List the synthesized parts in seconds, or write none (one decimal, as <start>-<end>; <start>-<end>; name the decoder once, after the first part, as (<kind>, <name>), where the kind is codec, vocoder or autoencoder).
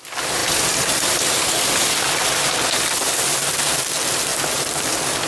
none